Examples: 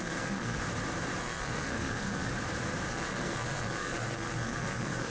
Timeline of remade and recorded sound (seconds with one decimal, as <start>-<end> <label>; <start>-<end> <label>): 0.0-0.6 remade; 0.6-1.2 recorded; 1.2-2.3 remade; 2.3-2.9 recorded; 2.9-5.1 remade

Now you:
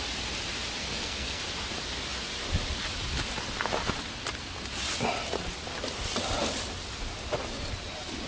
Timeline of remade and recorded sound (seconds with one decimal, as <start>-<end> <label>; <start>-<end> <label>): 0.0-0.8 recorded; 0.8-1.4 remade; 1.4-8.3 recorded

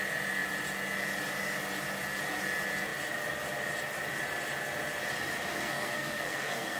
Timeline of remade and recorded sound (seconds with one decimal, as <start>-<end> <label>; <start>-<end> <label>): 0.0-5.5 recorded; 5.5-6.8 remade